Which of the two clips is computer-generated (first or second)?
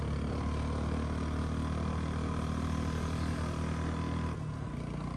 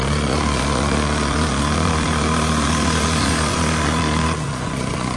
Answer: second